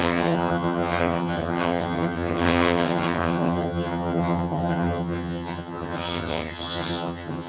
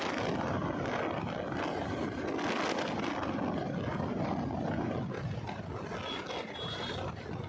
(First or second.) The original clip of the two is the second